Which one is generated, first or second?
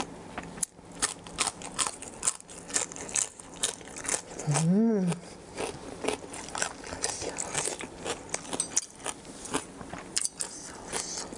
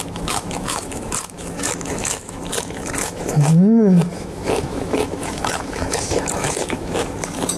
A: second